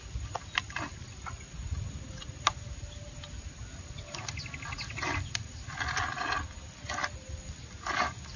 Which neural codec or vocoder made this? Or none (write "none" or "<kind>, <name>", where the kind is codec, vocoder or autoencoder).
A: none